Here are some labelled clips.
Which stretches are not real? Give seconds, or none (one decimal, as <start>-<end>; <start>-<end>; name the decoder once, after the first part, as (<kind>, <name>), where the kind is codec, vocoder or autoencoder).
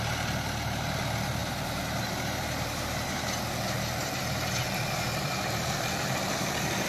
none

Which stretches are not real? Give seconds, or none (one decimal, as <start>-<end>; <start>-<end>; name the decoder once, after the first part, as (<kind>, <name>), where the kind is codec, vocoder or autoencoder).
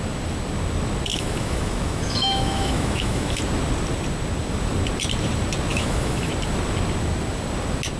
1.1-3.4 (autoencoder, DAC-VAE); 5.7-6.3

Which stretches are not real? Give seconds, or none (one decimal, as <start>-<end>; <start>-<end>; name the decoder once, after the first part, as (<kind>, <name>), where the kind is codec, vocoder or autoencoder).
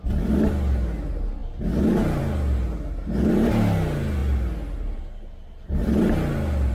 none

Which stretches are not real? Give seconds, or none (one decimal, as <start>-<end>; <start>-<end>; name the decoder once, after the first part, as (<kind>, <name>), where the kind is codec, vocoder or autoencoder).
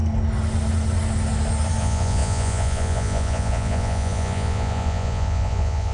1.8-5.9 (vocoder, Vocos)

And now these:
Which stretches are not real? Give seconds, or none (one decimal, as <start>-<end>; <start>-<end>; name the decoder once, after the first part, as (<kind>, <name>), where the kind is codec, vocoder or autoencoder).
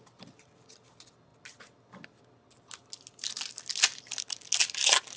none